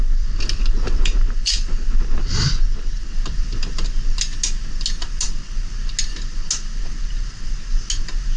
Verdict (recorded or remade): recorded